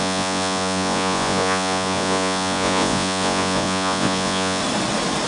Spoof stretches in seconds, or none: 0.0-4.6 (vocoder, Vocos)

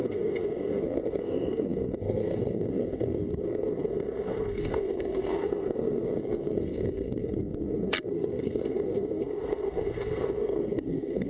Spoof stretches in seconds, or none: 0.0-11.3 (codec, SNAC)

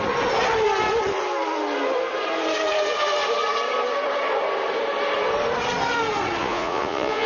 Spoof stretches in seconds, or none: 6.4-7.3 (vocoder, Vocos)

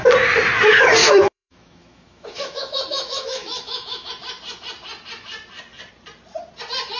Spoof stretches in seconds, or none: 1.0-4.1 (autoencoder, DAC-VAE)